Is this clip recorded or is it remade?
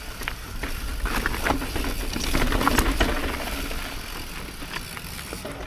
recorded